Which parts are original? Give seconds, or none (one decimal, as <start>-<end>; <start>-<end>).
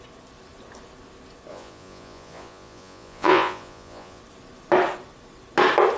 0.0-1.5; 4.2-6.0